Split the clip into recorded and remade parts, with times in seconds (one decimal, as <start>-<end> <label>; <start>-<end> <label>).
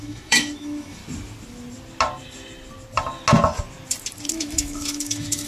0.0-1.0 remade; 1.0-4.3 recorded; 4.3-5.5 remade